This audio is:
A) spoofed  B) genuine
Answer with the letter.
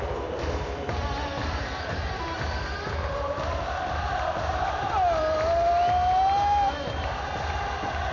B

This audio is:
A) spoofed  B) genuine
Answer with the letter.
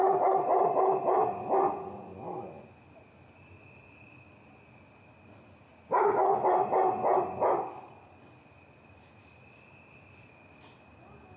B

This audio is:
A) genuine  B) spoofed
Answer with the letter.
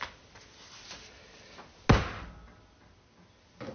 A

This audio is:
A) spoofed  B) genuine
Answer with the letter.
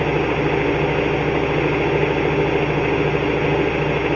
B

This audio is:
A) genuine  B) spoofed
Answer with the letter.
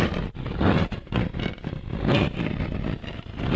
A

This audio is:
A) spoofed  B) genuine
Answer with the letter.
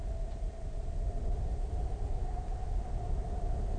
B